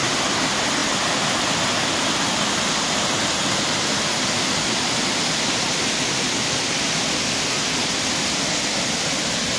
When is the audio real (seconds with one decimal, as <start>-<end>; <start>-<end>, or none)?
0.0-9.6